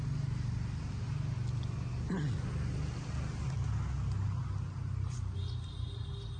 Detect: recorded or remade recorded